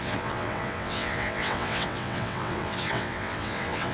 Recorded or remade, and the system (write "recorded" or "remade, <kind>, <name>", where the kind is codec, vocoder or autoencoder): remade, vocoder, WaveNeXt